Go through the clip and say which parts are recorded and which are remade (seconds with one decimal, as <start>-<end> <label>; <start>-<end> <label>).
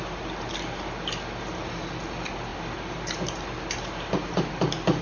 0.0-5.0 recorded